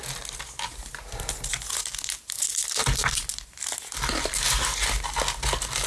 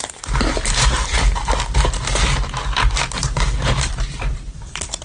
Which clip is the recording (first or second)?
first